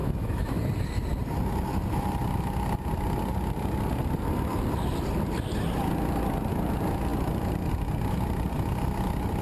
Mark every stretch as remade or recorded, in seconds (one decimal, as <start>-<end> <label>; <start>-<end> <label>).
0.0-0.6 remade; 0.6-9.4 recorded